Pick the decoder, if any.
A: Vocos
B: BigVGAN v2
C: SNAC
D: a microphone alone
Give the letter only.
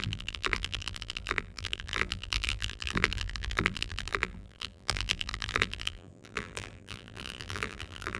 B